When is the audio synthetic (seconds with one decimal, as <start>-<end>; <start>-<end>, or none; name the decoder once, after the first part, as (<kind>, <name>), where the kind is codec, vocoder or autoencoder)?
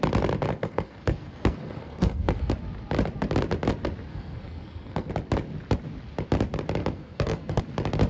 0.5-2.5 (codec, SNAC); 4.1-5.1; 6.8-7.6